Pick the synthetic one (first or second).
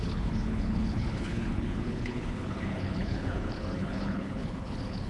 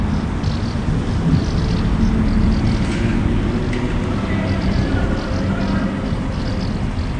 first